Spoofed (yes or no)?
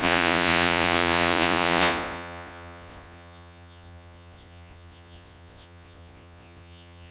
yes